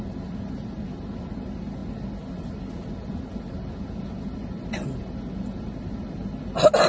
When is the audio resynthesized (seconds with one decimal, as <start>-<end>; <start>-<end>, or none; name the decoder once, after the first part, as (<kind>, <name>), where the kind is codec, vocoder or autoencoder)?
none